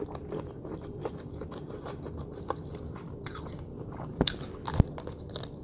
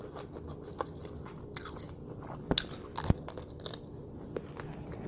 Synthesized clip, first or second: first